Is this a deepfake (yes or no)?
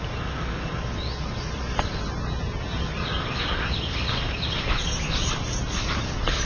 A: no